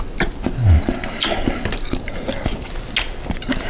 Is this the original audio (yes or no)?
yes